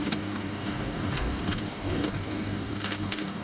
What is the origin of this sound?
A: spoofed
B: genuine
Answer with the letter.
A